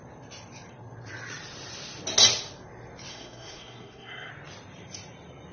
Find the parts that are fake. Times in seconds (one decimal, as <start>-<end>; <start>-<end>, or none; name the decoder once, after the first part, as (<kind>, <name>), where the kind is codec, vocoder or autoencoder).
3.1-4.3 (codec, SNAC)